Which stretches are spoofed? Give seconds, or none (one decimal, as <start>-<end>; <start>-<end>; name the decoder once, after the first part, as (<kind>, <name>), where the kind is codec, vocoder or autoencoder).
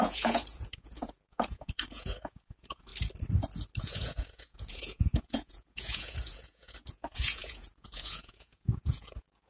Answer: 0.0-2.9 (vocoder, Vocos); 3.8-9.5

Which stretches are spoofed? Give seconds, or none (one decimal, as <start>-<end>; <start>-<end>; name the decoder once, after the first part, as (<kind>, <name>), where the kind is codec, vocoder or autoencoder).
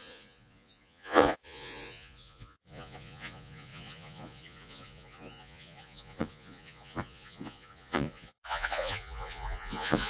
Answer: 0.0-10.1 (vocoder, Vocos)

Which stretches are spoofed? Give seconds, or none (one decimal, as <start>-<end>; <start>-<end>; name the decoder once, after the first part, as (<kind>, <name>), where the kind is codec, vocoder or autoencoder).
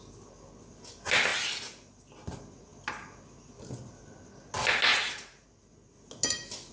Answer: 4.9-5.7 (vocoder, BigVGAN v2)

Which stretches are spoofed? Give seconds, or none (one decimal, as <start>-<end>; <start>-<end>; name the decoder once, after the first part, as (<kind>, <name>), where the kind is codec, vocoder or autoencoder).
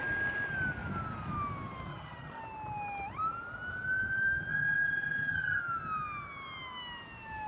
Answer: 1.9-2.4 (vocoder, HiFi-GAN); 4.5-5.6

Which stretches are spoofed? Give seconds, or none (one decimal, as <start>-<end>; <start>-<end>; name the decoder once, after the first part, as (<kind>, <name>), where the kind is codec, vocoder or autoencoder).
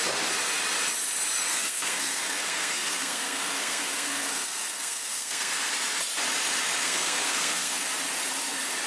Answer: 1.5-5.7 (codec, SNAC); 6.8-7.9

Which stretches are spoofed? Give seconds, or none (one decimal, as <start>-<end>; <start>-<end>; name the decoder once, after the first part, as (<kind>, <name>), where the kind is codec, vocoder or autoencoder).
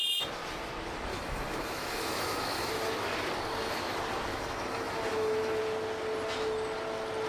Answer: 1.1-2.7 (autoencoder, DAC-VAE); 4.3-5.6